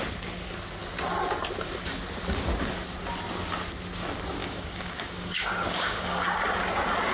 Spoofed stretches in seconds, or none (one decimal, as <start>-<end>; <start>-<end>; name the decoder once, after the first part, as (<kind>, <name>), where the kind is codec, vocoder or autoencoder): 4.4-6.4 (codec, DAC)